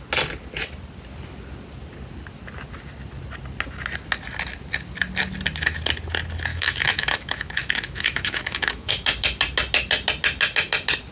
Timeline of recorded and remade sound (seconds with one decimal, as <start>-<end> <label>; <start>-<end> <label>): 0.0-6.5 recorded; 6.5-8.9 remade; 8.9-11.1 recorded